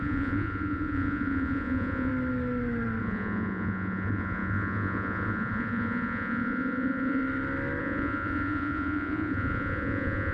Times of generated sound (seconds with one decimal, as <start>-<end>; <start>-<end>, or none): 0.0-2.1; 3.0-7.2; 7.8-10.3